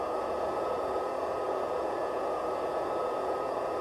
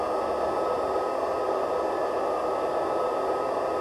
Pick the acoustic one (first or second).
second